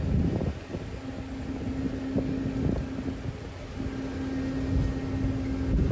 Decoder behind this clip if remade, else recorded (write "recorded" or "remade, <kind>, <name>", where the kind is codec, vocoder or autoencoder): recorded